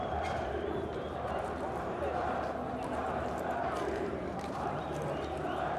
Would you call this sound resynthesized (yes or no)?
yes